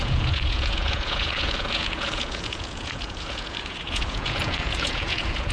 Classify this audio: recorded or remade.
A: remade